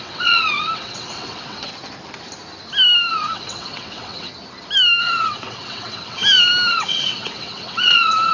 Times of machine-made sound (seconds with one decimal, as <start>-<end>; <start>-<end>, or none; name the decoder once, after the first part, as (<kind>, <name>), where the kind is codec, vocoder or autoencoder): 0.0-1.7 (vocoder, WaveNeXt); 3.1-4.3; 5.0-6.2; 6.7-8.3